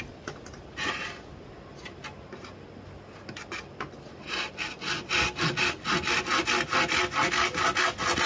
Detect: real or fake real